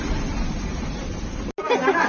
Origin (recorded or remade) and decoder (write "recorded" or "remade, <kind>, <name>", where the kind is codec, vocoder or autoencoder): recorded